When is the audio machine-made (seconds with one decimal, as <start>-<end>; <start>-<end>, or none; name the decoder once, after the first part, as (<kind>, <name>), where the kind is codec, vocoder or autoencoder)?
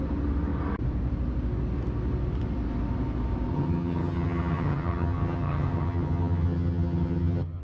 3.5-7.6 (vocoder, HiFi-GAN)